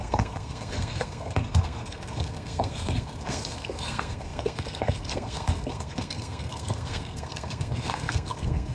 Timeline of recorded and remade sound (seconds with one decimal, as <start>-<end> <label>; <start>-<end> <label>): 0.0-8.7 remade